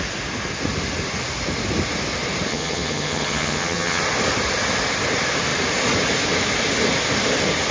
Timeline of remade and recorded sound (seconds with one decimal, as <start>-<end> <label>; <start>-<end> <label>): 0.0-2.5 recorded; 2.5-4.0 remade; 4.0-7.7 recorded